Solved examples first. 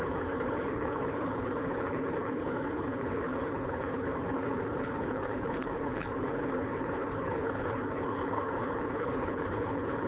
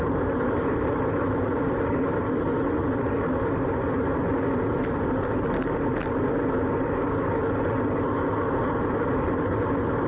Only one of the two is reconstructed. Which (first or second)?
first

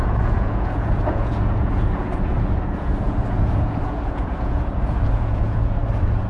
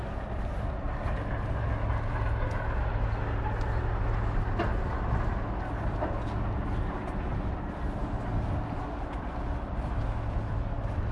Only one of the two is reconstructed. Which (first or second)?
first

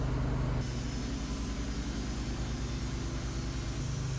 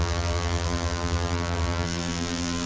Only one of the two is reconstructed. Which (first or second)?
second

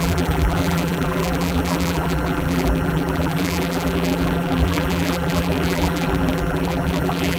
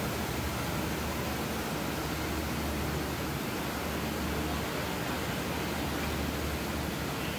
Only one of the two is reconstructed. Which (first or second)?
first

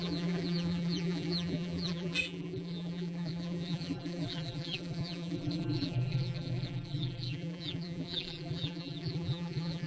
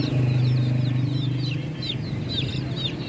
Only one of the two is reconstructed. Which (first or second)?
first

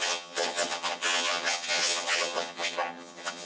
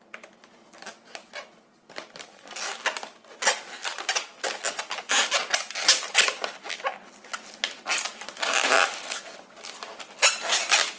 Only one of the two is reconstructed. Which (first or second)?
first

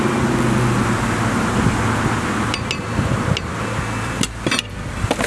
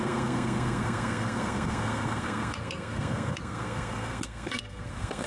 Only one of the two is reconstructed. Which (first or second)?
second